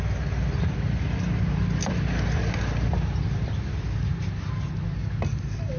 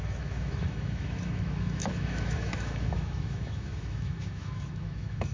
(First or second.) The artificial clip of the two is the second